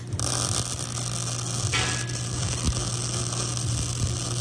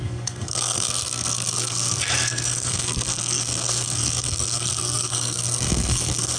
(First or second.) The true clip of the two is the first